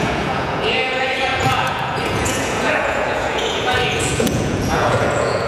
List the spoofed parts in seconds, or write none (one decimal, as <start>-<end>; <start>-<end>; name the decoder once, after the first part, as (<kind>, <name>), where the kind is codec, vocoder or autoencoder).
0.0-5.5 (vocoder, Vocos)